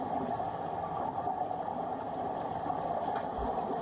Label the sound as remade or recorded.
recorded